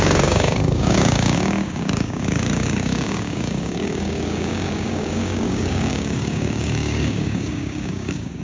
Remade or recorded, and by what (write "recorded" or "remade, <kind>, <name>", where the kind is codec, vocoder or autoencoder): remade, codec, DAC